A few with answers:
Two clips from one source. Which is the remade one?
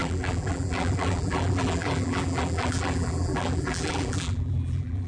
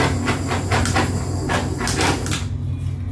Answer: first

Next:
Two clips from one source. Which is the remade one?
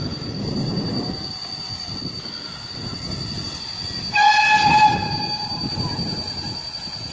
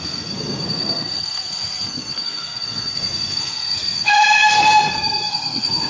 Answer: second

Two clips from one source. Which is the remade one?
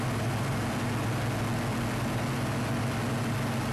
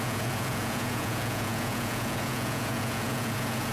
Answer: second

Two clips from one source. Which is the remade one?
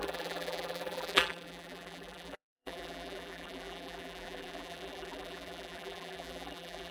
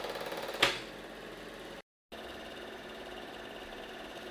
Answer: first